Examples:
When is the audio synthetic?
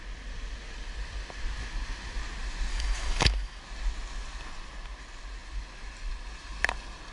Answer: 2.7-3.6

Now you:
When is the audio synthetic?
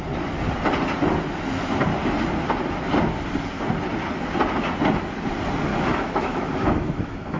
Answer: 5.7-7.4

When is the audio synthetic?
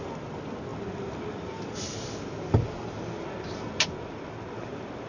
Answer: none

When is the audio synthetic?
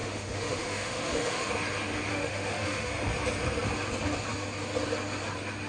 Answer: 0.0-1.5; 2.1-2.9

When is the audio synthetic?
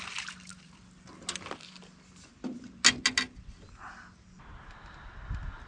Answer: none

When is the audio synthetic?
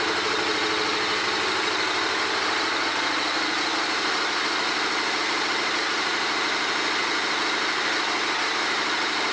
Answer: none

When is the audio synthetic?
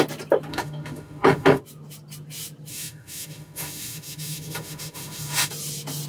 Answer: 0.5-1.6; 2.7-5.5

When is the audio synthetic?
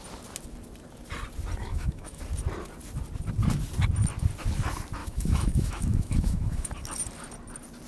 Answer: 1.6-2.2; 5.0-6.7